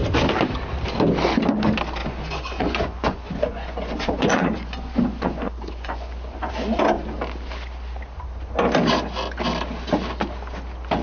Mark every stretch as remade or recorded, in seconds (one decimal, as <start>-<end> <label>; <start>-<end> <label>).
0.0-2.0 recorded; 2.0-6.5 remade; 6.5-11.0 recorded